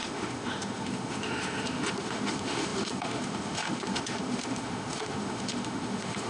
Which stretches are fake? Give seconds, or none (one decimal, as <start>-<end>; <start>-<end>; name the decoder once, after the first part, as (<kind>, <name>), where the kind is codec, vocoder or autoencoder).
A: 0.0-6.3 (autoencoder, DAC-VAE)